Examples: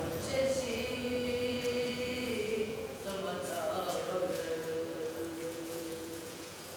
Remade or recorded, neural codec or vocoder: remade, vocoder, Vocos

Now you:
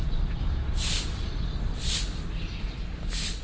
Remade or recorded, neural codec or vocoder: recorded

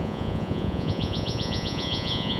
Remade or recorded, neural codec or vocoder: remade, vocoder, Vocos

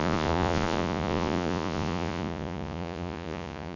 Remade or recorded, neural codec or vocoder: remade, vocoder, Vocos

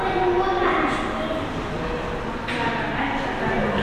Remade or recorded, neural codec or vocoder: recorded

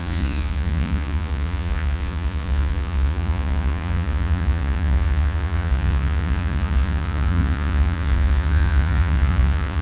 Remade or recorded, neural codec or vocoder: remade, vocoder, Vocos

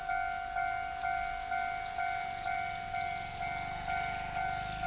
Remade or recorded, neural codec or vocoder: recorded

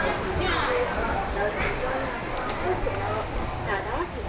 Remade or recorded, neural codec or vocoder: recorded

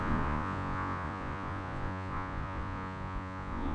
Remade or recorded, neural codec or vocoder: remade, vocoder, Vocos